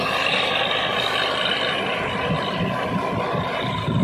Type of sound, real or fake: real